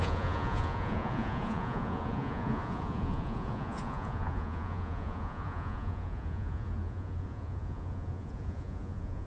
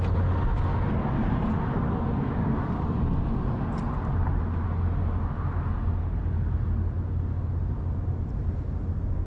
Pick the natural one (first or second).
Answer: second